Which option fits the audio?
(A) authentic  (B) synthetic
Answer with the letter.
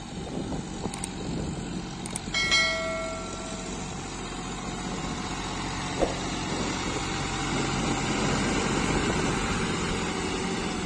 A